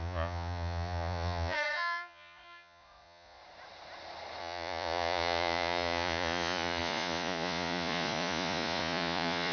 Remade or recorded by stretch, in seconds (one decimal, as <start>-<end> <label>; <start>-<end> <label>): 0.0-3.4 remade; 3.4-4.4 recorded; 4.4-9.5 remade